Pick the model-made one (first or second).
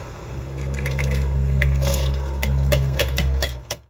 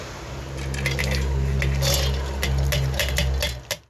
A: first